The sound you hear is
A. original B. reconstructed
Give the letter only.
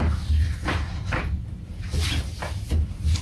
B